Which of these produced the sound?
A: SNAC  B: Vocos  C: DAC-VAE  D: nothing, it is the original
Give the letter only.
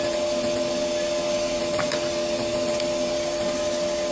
D